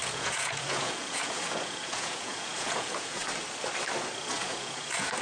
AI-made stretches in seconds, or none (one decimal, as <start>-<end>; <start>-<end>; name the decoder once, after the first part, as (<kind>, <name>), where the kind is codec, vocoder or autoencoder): 0.0-3.2 (vocoder, Vocos); 4.3-5.2